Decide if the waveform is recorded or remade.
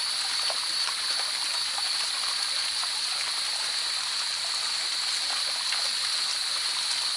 recorded